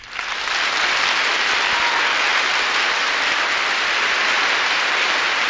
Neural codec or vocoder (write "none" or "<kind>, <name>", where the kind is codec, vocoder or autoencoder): none